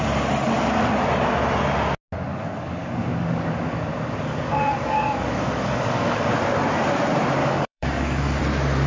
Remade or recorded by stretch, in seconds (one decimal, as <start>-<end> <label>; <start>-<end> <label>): 0.0-2.3 recorded; 2.3-6.3 remade; 6.3-7.4 recorded; 7.4-8.4 remade; 8.4-8.9 recorded